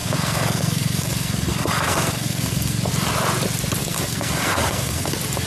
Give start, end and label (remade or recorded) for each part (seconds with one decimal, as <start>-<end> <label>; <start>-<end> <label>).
0.0-2.9 remade; 2.9-3.8 recorded; 3.8-5.1 remade; 5.1-5.5 recorded